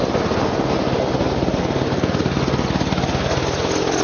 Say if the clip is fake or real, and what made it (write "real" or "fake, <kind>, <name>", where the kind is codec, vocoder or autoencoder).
real